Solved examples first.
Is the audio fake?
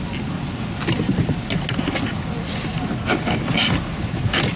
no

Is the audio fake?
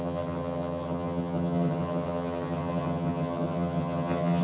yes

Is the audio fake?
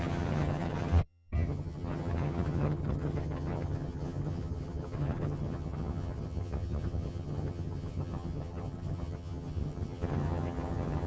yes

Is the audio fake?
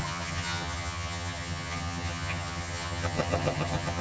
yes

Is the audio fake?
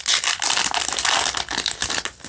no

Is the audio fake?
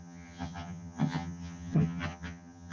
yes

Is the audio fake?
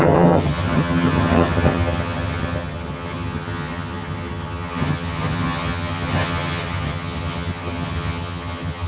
yes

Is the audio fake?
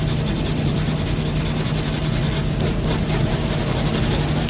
no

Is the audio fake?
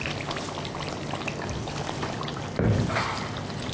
no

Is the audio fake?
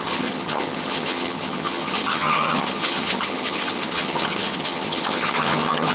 yes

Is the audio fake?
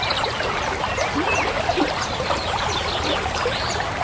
no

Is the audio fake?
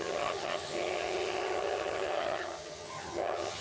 yes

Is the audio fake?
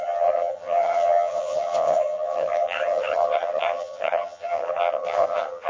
yes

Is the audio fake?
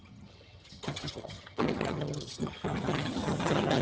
yes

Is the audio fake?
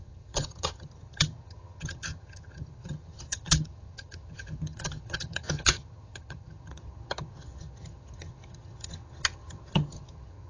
yes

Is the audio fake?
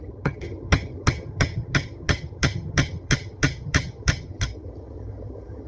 yes